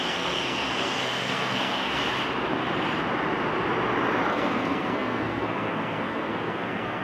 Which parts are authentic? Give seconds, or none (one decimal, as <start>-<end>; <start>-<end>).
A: 2.0-4.3